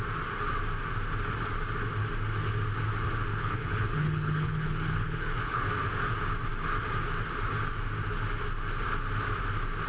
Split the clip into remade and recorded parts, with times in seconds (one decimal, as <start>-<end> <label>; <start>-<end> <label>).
0.0-3.3 recorded; 3.3-5.7 remade; 5.7-9.9 recorded